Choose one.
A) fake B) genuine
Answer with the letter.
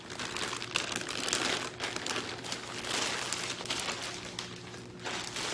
B